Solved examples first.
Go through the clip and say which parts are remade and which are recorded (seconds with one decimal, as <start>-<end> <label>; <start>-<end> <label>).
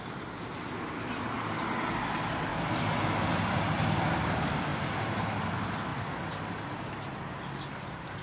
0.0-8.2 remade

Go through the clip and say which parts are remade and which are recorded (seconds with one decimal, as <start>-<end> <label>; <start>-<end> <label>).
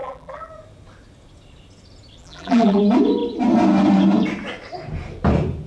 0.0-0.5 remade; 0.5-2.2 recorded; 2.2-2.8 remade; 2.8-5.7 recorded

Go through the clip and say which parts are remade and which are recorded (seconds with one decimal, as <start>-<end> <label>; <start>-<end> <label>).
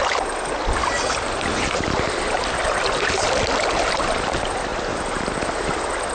0.0-4.7 recorded; 4.7-5.4 remade; 5.4-6.1 recorded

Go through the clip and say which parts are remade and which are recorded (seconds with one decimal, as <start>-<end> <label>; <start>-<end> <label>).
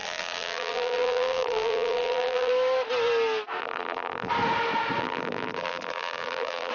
0.0-2.5 remade; 2.5-3.6 recorded; 3.6-4.3 remade; 4.3-5.0 recorded; 5.0-6.7 remade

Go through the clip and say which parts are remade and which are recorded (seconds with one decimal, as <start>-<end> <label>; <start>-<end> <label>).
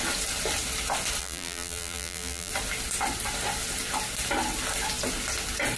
0.0-1.2 recorded; 1.2-2.5 remade; 2.5-5.8 recorded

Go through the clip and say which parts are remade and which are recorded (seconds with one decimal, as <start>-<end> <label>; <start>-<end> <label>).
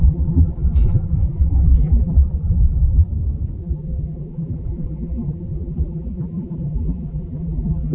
0.0-3.1 remade; 3.1-3.6 recorded; 3.6-7.9 remade